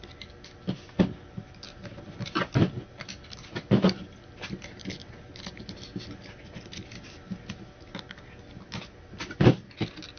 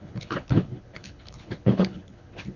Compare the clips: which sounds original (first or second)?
first